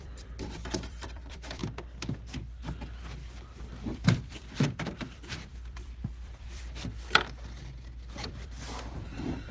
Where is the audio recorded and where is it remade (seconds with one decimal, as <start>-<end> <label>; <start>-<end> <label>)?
0.0-1.6 remade; 1.6-3.9 recorded; 3.9-9.5 remade